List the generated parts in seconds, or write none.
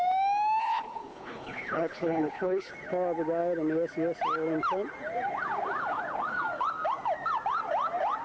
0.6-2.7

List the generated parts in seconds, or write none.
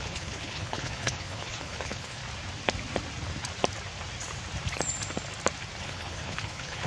0.0-2.2; 5.8-6.9